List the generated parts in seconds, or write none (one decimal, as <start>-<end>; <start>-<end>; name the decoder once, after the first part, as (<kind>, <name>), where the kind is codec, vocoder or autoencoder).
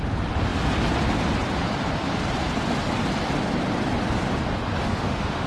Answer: 4.8-5.5 (autoencoder, DAC-VAE)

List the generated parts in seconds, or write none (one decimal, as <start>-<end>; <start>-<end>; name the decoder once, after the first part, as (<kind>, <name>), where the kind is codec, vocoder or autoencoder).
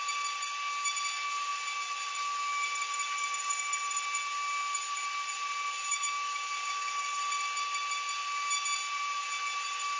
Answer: 5.8-7.0 (autoencoder, DAC-VAE)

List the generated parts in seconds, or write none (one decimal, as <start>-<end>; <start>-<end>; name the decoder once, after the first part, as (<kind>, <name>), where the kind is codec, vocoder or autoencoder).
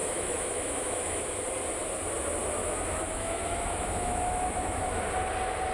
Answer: 0.0-1.4 (autoencoder, DAC-VAE); 2.6-5.0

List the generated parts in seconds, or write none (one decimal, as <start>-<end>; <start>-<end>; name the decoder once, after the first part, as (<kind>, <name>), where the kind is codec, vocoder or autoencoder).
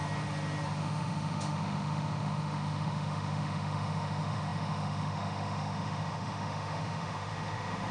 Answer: 0.8-7.9 (autoencoder, DAC-VAE)